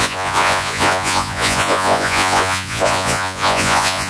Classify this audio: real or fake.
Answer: fake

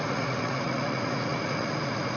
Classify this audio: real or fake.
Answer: fake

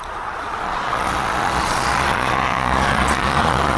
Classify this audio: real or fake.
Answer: fake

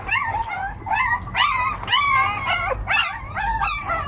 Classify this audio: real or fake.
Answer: real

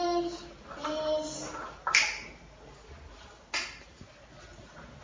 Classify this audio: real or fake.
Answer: real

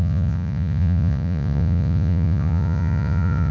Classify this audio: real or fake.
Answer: fake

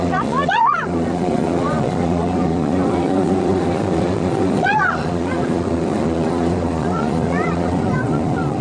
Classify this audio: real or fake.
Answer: fake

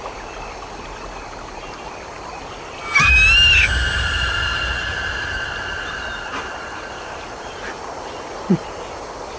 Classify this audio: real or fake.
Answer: real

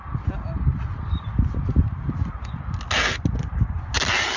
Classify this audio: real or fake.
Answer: real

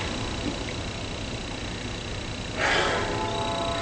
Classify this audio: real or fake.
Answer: real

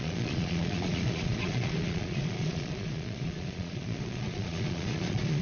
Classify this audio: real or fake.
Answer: fake